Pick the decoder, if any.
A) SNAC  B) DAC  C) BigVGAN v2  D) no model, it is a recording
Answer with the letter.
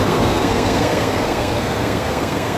A